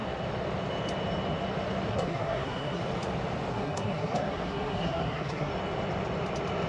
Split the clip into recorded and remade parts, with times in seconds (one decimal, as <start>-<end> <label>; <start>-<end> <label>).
0.0-1.9 recorded; 1.9-2.8 remade; 2.8-3.5 recorded; 3.5-5.5 remade; 5.5-6.7 recorded